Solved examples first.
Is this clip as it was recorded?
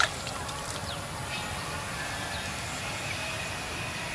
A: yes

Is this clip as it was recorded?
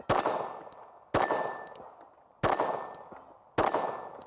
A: yes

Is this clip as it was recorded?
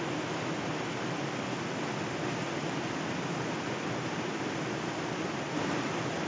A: yes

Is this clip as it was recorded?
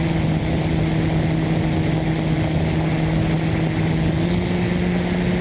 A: yes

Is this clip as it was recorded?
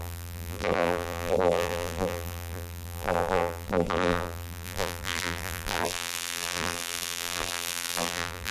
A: no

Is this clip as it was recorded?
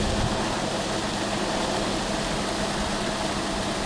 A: yes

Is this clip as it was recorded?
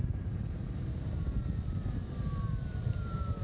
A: no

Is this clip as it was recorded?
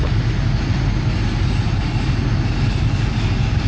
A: yes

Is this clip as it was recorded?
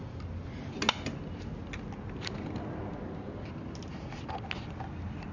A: yes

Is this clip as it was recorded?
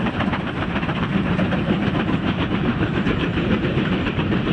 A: no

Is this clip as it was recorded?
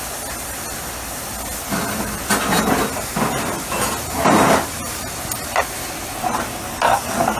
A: yes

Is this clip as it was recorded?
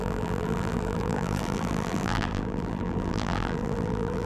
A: no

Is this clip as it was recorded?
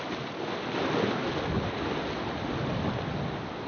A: yes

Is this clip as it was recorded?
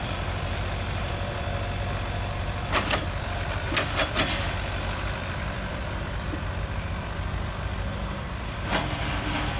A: no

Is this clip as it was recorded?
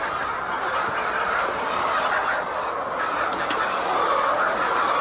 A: no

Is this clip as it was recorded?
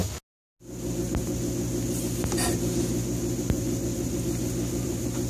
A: yes